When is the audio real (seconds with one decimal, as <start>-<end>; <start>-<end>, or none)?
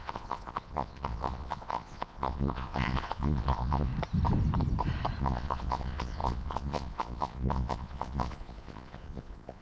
3.9-5.2